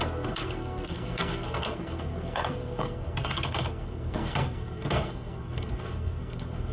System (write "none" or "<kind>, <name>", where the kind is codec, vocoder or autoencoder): codec, SNAC